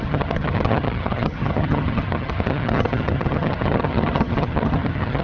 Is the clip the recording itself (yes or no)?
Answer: no